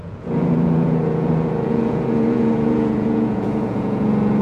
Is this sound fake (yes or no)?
yes